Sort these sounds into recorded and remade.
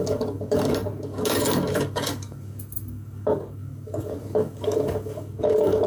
remade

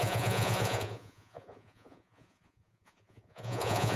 remade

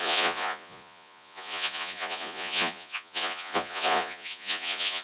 remade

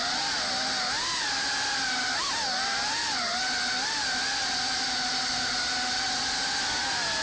remade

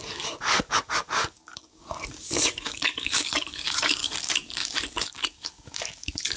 remade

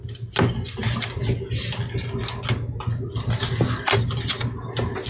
recorded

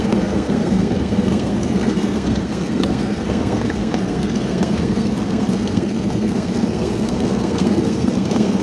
remade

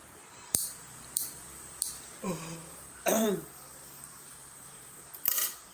remade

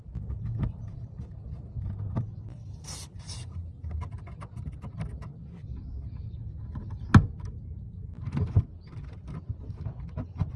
recorded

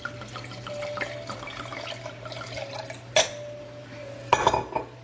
recorded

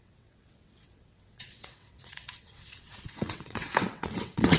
remade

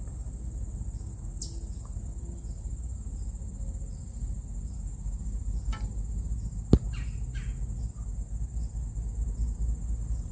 recorded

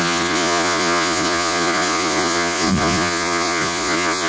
remade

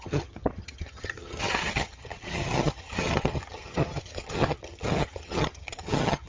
remade